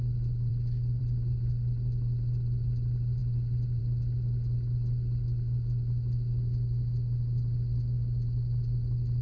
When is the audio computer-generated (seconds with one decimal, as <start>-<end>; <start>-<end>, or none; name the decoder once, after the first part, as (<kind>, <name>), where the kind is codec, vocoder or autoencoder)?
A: none